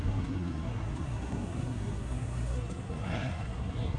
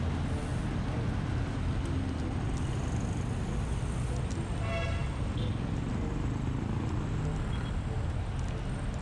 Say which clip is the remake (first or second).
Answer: first